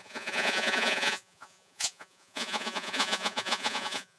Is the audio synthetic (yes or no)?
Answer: yes